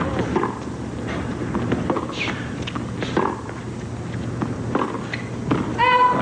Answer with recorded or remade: recorded